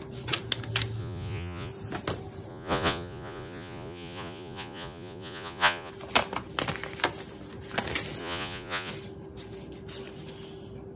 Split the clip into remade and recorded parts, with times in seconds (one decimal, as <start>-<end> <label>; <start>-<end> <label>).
0.0-1.0 recorded; 1.0-1.7 remade; 1.7-2.5 recorded; 2.5-5.9 remade; 5.9-8.2 recorded; 8.2-8.9 remade; 8.9-11.0 recorded